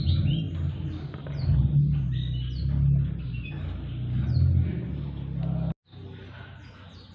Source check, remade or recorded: recorded